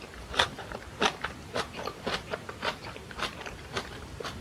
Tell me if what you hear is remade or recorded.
remade